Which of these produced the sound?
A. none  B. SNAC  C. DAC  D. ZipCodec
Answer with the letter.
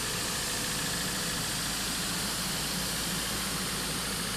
A